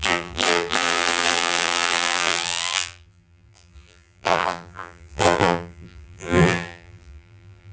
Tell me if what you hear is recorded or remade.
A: remade